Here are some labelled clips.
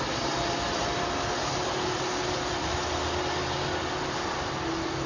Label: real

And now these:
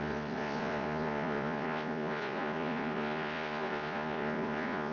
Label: fake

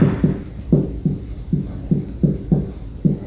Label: real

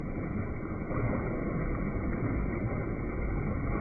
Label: fake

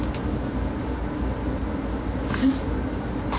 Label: real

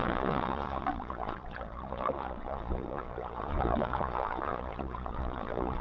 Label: fake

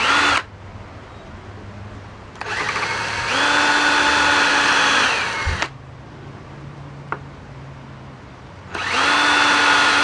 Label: real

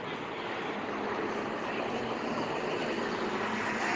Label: real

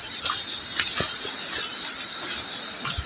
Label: real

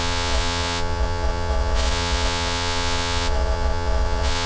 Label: fake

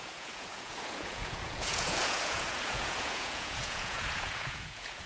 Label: fake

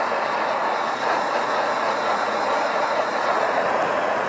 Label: fake